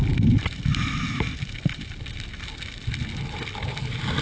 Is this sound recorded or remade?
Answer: recorded